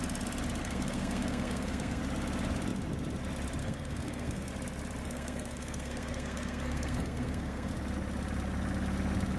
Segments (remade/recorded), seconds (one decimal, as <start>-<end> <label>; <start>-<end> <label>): 0.0-0.6 recorded; 0.6-2.0 remade; 2.0-3.6 recorded; 3.6-4.5 remade; 4.5-5.0 recorded; 5.0-7.7 remade; 7.7-9.4 recorded